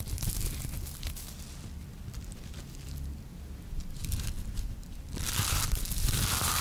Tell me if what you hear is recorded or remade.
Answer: remade